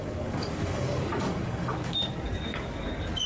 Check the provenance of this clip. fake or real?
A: fake